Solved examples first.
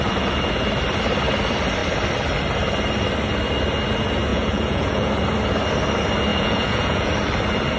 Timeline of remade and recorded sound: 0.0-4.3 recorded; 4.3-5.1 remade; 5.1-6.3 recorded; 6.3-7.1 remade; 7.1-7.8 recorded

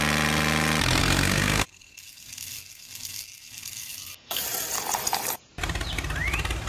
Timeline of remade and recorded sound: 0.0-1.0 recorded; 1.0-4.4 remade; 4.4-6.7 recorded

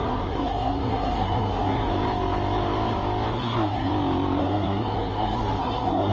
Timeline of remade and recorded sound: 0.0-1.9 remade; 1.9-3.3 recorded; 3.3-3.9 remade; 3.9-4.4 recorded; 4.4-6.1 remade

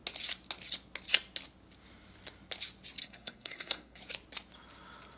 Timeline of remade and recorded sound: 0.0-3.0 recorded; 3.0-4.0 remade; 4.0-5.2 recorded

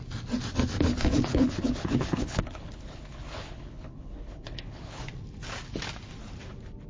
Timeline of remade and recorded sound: 0.0-0.9 recorded; 0.9-5.0 remade; 5.0-6.9 recorded